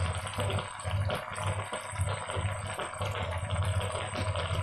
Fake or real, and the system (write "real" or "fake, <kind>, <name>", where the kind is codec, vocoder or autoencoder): real